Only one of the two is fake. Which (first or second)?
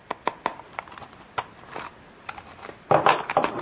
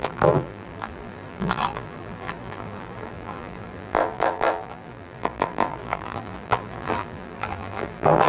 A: second